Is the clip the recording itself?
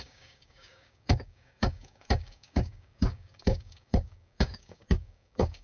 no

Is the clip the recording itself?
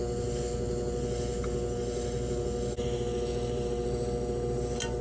yes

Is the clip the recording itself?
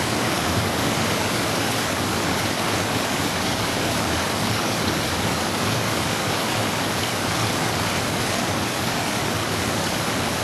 no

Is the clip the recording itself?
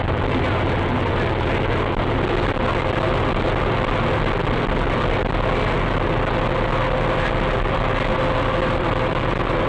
yes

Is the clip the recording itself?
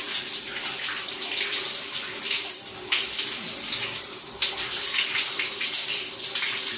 yes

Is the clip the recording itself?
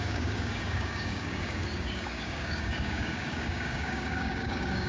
no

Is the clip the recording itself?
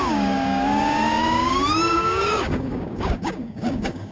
no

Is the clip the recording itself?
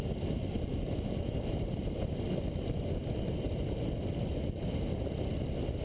yes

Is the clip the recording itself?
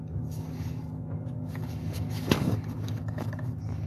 no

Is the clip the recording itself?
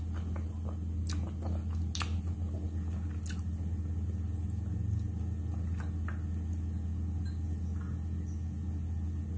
yes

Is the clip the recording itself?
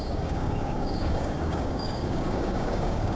no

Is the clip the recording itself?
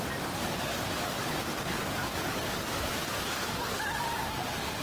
no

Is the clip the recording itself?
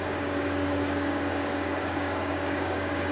no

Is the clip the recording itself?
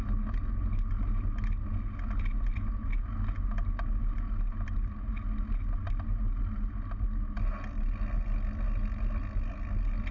yes